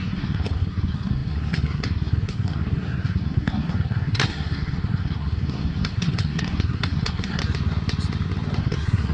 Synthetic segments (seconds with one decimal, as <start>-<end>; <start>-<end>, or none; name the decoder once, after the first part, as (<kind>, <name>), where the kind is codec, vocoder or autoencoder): 0.0-7.4 (codec, SNAC); 8.6-9.1